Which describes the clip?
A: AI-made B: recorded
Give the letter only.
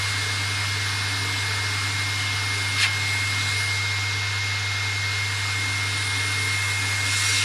B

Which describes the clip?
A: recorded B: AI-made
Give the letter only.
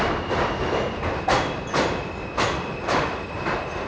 A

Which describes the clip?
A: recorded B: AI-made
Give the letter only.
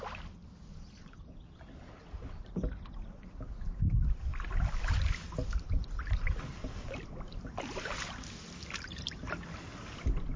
A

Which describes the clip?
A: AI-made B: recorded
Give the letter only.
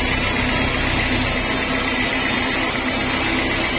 B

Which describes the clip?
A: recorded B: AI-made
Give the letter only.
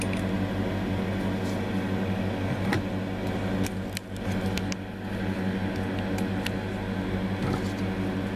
A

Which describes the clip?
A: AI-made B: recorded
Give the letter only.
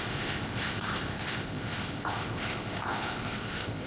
A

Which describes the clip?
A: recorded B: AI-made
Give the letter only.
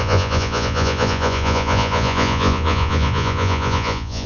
B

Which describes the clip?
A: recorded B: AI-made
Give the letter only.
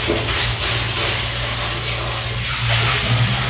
A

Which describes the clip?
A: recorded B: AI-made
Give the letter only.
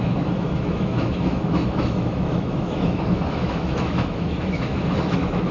B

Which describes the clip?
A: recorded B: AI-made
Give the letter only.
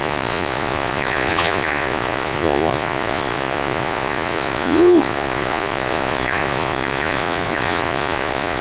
B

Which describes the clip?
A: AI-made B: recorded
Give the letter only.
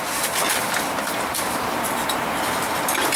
B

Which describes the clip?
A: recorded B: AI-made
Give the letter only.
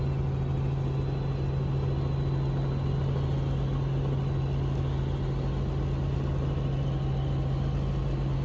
A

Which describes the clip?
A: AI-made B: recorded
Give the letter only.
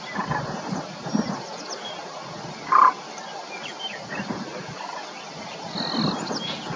B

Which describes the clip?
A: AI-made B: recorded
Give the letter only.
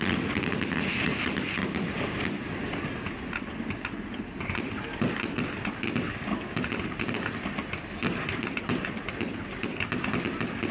B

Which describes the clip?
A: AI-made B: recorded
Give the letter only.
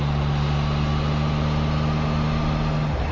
B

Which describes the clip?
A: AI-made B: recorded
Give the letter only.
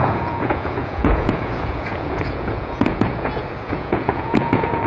A